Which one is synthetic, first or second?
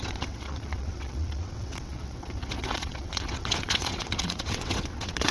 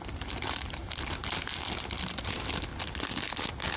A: first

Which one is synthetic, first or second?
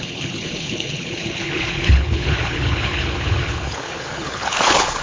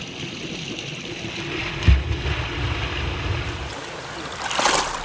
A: first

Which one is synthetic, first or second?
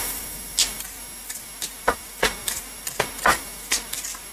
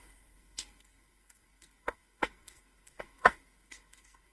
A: second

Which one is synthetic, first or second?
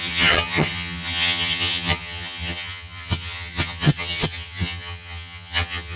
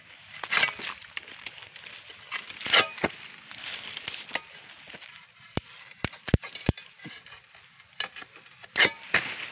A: first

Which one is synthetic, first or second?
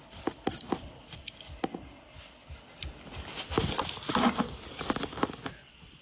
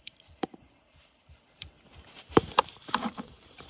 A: second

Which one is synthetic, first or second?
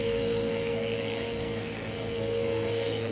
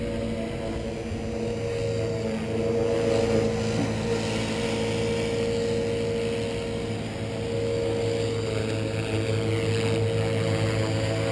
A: first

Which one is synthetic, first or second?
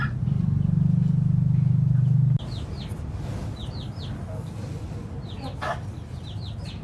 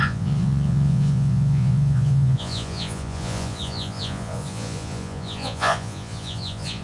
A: second